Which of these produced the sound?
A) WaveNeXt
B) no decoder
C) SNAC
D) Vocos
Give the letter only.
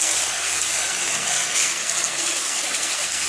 C